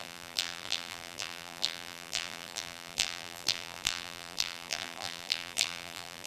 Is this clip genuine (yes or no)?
no